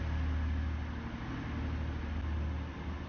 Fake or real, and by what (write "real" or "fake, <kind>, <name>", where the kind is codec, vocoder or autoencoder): real